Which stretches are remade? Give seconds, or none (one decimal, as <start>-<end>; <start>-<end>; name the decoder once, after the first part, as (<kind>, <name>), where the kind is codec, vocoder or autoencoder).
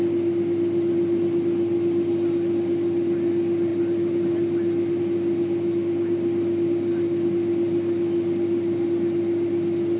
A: none